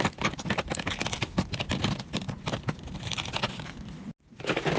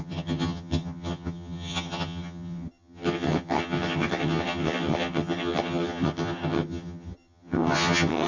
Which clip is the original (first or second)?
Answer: first